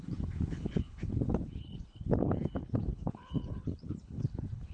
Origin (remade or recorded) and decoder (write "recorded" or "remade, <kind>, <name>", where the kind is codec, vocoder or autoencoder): remade, codec, HILCodec